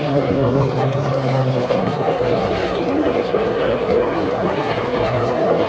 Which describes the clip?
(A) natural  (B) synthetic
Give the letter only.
B